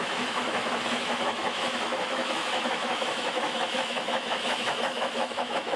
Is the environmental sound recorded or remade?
remade